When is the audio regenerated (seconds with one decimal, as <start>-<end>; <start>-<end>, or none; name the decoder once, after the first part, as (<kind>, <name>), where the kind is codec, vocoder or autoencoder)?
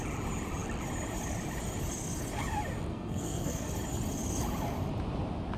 2.9-3.7 (codec, SNAC)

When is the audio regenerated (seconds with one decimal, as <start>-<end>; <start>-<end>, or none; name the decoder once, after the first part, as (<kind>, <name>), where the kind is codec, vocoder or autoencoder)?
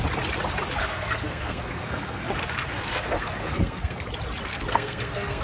0.8-4.0 (codec, SNAC); 4.5-5.4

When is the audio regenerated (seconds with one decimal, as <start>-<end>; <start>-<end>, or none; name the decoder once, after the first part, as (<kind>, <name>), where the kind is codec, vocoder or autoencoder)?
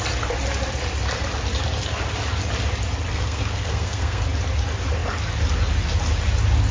3.1-4.2 (codec, SNAC)